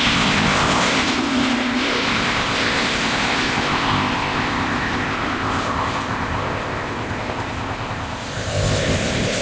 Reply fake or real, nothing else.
fake